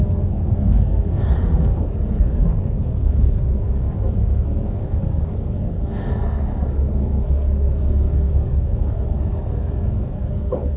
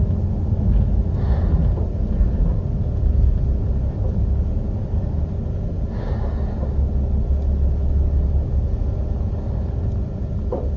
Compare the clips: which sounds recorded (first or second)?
second